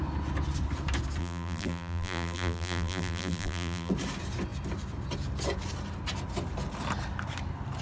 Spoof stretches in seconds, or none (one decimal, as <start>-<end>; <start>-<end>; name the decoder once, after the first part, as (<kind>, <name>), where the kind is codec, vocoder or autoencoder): 1.2-3.9 (vocoder, BigVGAN v2)